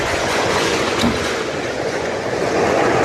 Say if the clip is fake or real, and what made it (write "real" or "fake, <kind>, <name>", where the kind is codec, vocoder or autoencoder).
fake, vocoder, Vocos